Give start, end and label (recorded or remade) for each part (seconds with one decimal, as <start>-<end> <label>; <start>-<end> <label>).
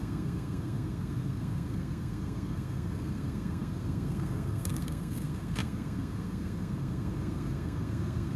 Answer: 0.0-8.4 remade